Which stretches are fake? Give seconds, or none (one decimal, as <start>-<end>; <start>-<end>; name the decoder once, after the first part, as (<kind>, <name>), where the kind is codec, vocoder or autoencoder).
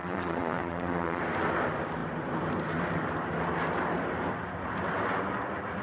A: 0.0-1.2 (vocoder, Vocos)